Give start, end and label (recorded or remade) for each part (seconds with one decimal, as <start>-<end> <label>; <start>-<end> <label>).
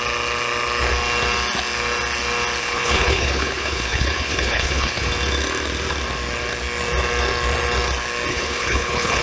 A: 0.0-2.6 recorded; 2.6-5.1 remade; 5.1-8.3 recorded; 8.3-9.2 remade